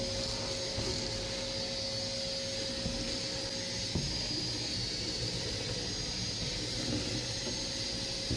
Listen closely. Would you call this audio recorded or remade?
recorded